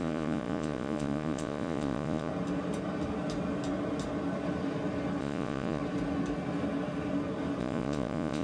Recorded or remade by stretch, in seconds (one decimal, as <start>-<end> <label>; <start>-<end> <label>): 0.0-2.3 remade; 2.3-5.2 recorded; 5.2-5.8 remade; 5.8-7.6 recorded; 7.6-8.4 remade